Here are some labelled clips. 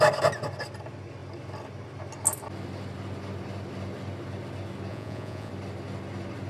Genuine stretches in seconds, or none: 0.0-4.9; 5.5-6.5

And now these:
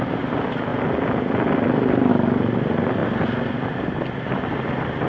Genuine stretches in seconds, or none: 0.0-5.1

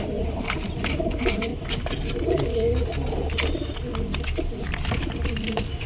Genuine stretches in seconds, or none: 1.5-4.9

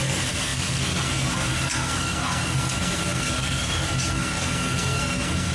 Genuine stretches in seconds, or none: none

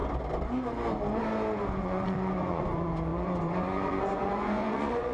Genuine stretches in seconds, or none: 0.0-1.8

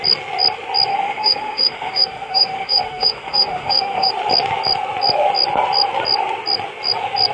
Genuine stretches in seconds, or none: 0.0-0.9; 4.1-7.3

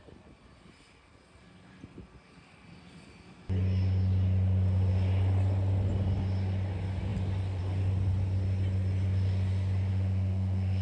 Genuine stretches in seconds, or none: 0.0-9.9